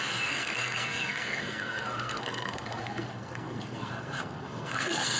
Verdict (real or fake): fake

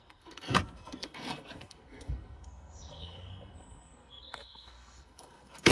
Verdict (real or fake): fake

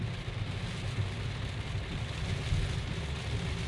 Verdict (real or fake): real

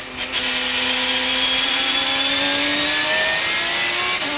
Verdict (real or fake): real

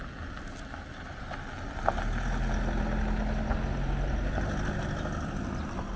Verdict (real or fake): real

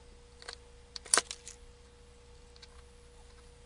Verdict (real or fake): real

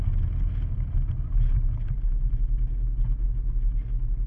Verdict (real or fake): real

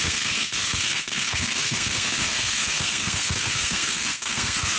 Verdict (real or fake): fake